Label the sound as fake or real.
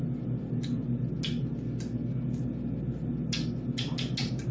real